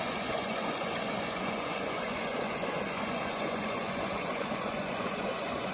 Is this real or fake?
fake